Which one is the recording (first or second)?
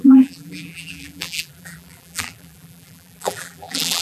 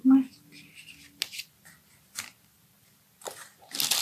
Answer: second